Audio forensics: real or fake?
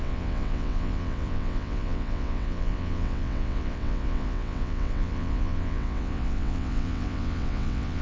fake